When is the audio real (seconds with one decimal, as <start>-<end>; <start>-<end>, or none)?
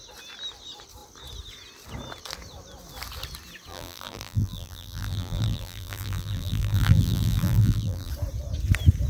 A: 0.0-3.7; 8.1-9.1